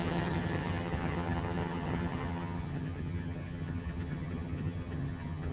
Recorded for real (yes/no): no